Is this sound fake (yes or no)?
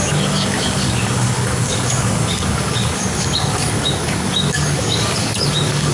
yes